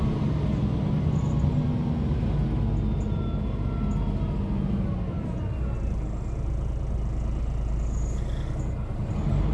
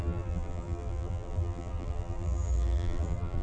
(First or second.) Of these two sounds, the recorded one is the first